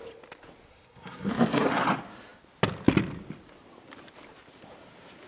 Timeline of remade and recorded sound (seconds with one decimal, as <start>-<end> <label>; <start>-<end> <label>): 0.0-0.7 recorded; 0.7-1.3 remade; 1.3-5.3 recorded